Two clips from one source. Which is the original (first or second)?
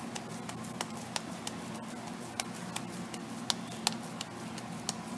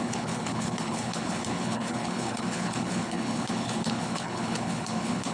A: first